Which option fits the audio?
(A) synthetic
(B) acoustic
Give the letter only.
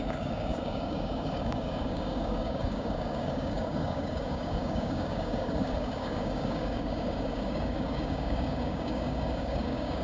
A